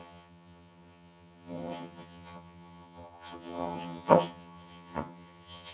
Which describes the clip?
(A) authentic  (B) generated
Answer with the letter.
B